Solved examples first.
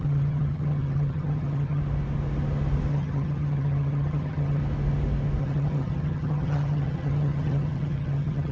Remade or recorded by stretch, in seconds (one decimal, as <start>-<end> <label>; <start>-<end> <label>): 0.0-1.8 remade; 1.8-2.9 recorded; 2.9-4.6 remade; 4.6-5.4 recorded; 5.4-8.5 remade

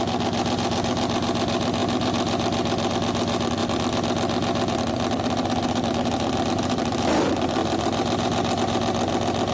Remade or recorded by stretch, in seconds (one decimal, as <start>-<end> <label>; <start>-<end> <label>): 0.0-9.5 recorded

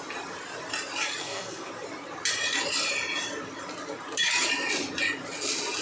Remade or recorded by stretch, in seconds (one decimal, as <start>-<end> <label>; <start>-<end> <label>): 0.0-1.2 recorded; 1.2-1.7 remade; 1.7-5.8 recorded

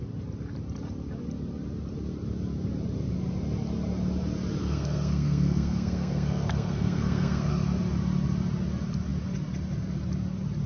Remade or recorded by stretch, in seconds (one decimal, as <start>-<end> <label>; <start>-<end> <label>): 0.0-4.6 recorded; 4.6-7.5 remade; 7.5-10.7 recorded

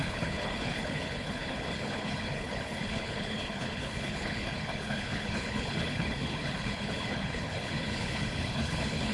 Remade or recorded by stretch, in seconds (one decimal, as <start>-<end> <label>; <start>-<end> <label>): 0.0-9.1 remade